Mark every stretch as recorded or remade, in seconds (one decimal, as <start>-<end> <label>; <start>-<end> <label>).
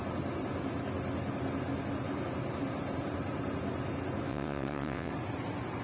0.0-4.3 recorded; 4.3-5.1 remade; 5.1-5.8 recorded